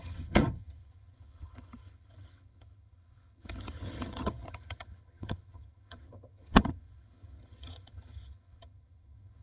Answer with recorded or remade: remade